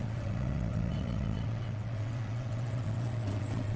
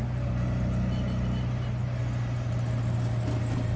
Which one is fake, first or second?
first